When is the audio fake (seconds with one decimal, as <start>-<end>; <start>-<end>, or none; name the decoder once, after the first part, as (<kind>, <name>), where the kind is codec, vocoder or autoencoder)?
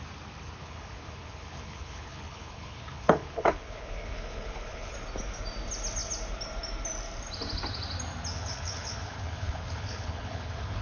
0.6-4.9 (codec, HILCodec); 8.3-10.8